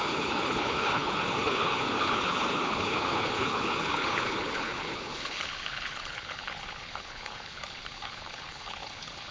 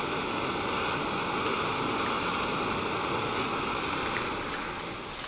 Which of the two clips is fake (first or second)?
first